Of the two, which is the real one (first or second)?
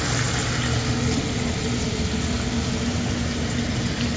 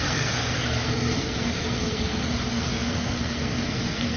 first